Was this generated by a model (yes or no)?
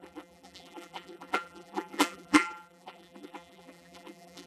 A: yes